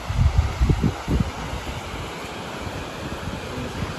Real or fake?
real